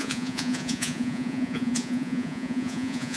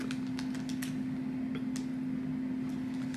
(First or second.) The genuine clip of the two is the second